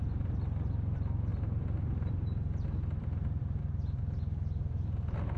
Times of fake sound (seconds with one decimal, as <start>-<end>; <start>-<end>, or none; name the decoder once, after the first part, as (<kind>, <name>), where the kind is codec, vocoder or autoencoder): 1.3-2.1 (vocoder, BigVGAN v2); 3.0-3.6